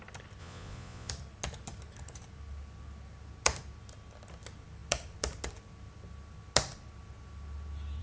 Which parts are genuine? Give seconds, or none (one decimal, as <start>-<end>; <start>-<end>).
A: 0.0-0.4; 1.1-8.0